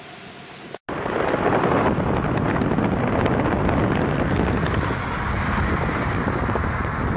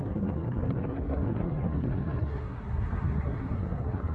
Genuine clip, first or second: first